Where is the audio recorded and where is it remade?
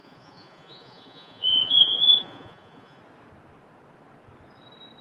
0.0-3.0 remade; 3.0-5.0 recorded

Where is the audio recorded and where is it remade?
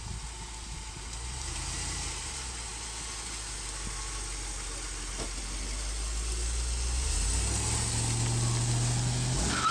0.0-9.7 recorded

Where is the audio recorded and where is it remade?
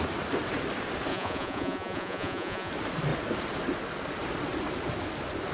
0.0-1.1 recorded; 1.1-2.7 remade; 2.7-5.5 recorded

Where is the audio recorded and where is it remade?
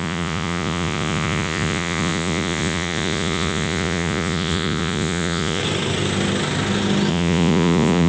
0.0-5.6 remade; 5.6-7.1 recorded; 7.1-8.1 remade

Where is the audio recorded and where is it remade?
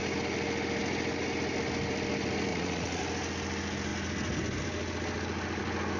0.0-2.5 recorded; 2.5-3.0 remade; 3.0-6.0 recorded